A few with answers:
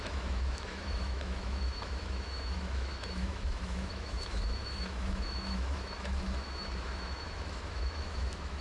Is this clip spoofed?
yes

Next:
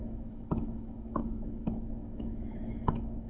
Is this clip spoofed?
yes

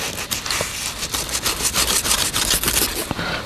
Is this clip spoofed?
no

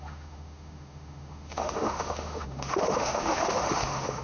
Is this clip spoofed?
yes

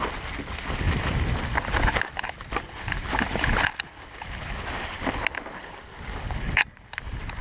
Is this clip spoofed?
no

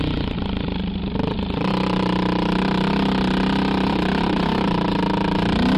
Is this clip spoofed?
no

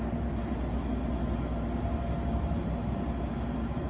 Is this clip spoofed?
no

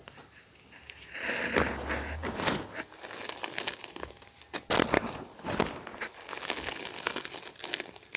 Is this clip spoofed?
no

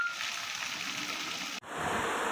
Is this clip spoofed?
no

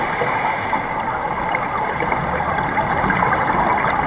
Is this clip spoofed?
no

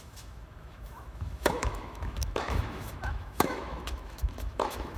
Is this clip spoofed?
yes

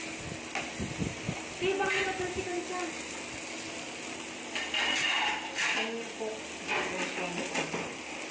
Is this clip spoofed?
no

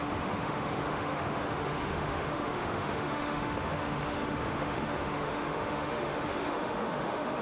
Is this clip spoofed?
yes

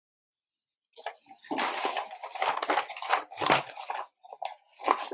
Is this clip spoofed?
no